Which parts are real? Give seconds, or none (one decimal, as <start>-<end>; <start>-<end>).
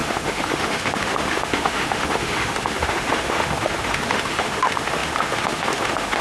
none